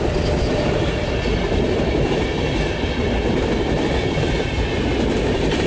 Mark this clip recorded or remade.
remade